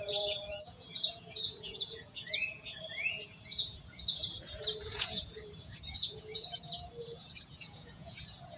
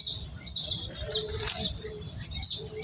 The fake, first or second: first